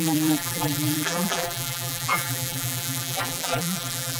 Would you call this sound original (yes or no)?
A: no